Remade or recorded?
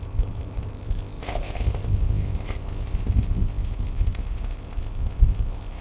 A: remade